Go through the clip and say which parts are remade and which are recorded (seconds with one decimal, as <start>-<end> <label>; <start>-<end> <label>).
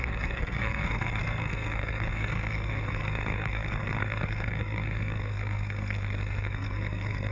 0.0-7.3 remade